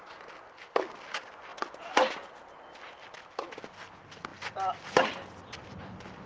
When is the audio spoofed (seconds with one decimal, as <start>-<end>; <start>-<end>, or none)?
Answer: none